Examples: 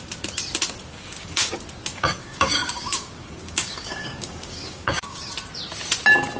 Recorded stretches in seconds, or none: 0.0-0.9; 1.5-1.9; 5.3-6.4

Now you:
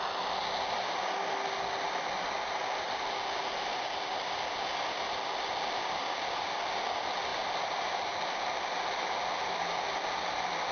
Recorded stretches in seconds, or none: 0.0-10.7

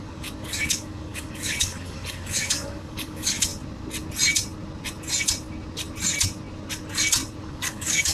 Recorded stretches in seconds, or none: 3.5-7.4

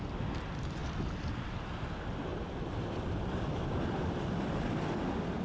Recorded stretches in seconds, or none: 0.0-5.4